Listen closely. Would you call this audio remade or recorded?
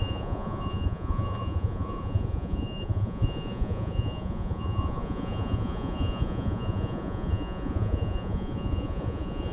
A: remade